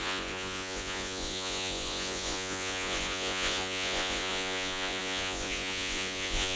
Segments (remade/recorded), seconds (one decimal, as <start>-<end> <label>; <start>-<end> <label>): 0.0-6.6 remade